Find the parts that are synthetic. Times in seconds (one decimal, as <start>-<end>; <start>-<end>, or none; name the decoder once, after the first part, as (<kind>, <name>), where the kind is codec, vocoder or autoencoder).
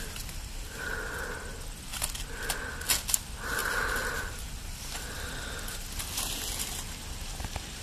none